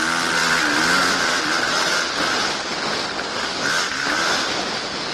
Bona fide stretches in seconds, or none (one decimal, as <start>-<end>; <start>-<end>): 0.0-5.1